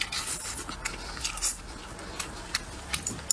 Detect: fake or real real